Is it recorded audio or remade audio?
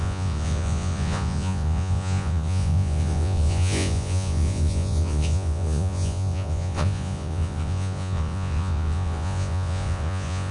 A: remade